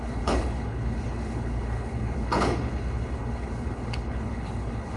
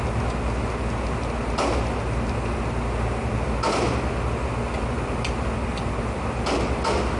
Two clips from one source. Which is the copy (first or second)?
first